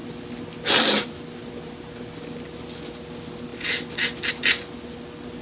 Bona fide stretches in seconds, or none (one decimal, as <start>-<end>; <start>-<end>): 0.0-5.4